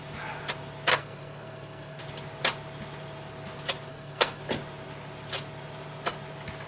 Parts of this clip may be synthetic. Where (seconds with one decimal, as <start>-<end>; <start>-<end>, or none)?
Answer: 0.9-2.0; 3.9-4.4